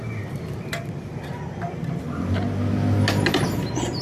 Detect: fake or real real